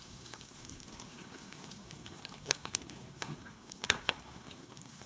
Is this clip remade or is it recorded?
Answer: remade